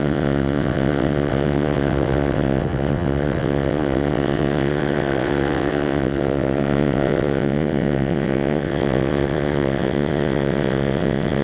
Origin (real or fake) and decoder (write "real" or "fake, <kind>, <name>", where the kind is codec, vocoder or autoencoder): fake, vocoder, WaveNeXt